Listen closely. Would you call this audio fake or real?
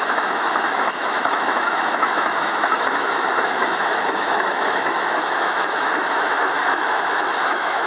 fake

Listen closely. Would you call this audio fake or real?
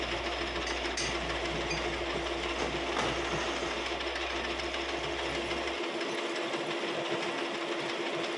real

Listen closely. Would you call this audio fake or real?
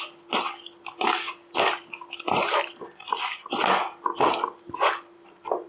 real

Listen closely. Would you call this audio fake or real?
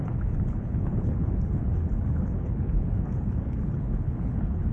fake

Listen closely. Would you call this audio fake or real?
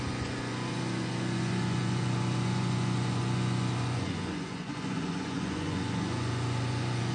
fake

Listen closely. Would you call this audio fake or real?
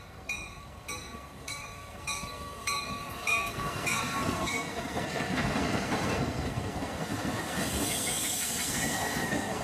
fake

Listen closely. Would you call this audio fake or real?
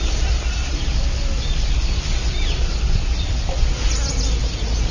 real